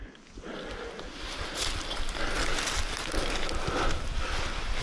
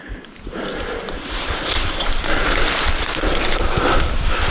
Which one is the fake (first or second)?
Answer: second